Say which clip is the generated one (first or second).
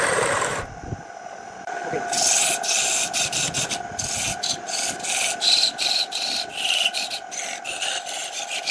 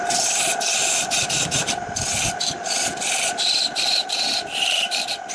second